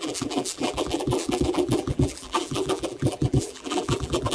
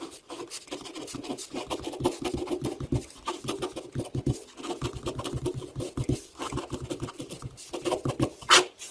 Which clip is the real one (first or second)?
second